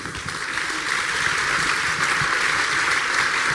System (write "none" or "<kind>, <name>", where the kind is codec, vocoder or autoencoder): none